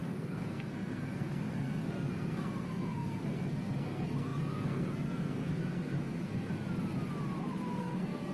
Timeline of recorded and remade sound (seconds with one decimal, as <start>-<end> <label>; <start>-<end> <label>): 0.0-6.5 remade; 6.5-7.8 recorded; 7.8-8.3 remade